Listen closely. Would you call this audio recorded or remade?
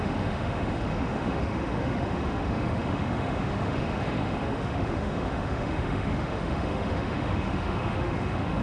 remade